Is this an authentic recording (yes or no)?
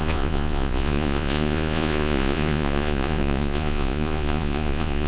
no